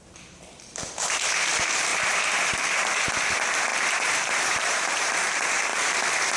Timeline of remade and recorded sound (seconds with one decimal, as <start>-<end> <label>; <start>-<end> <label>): 0.0-1.9 recorded; 1.9-2.5 remade; 2.5-3.7 recorded; 3.7-5.1 remade; 5.1-6.4 recorded